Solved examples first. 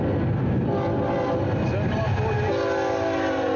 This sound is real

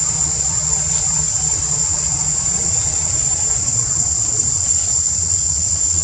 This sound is fake